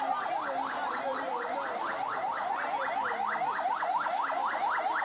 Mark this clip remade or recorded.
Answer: recorded